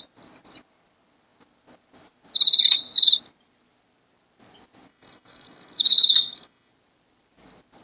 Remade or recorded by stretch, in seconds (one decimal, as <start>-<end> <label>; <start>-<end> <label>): 0.0-4.9 recorded; 4.9-6.7 remade; 6.7-7.8 recorded